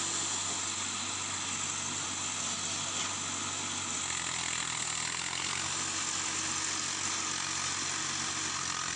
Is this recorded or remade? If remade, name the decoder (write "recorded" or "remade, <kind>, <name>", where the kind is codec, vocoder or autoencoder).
recorded